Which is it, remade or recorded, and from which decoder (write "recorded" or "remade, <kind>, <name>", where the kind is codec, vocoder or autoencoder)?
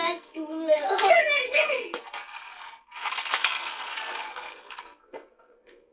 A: remade, codec, SNAC